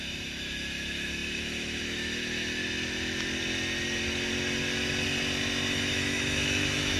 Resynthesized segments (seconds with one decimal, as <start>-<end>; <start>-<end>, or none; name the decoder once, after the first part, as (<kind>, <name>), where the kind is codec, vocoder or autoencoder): 0.0-2.6 (autoencoder, DAC-VAE); 5.7-7.0